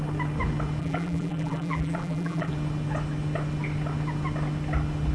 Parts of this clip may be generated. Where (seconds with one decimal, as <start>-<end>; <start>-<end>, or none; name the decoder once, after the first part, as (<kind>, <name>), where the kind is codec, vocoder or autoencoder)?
0.8-2.5 (vocoder, BigVGAN v2)